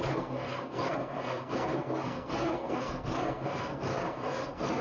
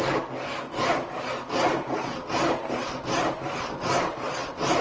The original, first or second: second